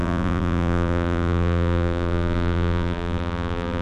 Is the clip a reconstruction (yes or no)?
yes